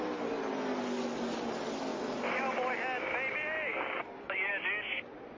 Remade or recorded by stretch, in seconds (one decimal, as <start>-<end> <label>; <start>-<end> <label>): 0.0-3.7 recorded; 3.7-4.5 remade; 4.5-5.4 recorded